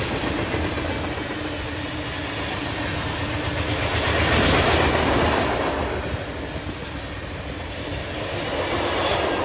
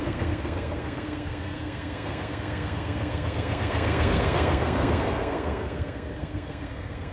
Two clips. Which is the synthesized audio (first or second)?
second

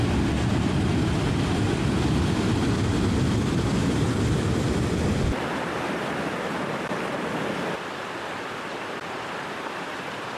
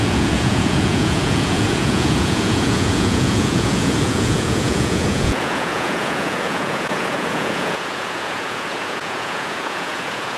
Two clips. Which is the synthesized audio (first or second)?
second